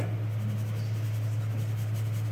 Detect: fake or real real